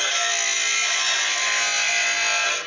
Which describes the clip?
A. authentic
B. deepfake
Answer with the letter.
A